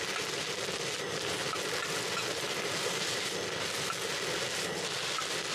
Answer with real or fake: real